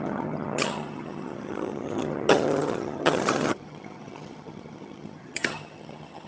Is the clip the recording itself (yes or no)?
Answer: no